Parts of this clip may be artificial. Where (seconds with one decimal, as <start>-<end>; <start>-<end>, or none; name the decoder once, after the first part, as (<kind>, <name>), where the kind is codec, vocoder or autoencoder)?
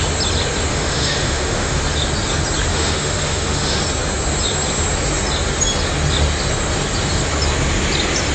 0.7-1.8 (autoencoder, DAC-VAE); 2.7-3.8